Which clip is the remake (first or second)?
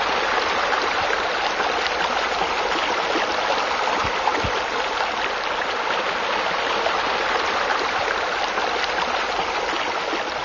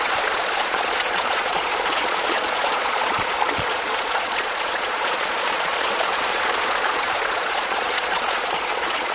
second